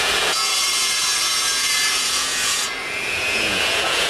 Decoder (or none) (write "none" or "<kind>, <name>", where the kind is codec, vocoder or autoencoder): vocoder, Vocos